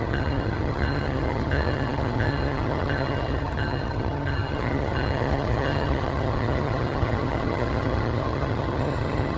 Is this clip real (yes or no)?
no